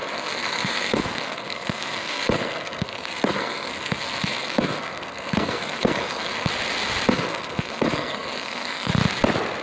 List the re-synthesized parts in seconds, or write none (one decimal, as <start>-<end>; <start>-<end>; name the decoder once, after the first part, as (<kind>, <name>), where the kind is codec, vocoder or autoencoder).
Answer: 0.0-6.5 (codec, SNAC); 7.1-8.9